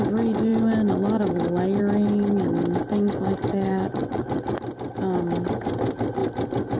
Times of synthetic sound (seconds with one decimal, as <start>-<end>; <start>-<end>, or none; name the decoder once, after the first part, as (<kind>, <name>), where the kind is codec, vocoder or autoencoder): 3.5-4.6 (vocoder, WaveNeXt)